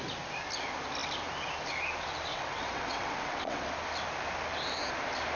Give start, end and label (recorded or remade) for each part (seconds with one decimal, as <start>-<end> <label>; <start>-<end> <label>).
0.0-2.3 recorded; 2.3-3.7 remade; 3.7-5.4 recorded